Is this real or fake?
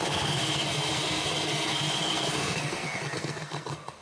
fake